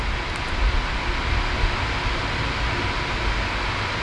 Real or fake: real